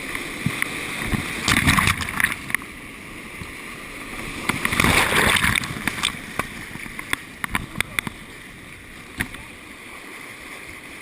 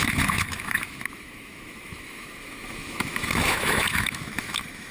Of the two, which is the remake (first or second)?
second